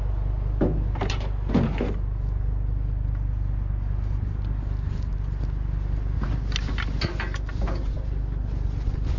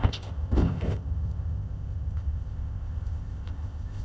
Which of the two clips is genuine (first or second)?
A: first